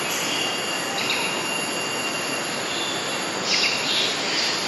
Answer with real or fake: real